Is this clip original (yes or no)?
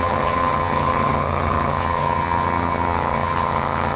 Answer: no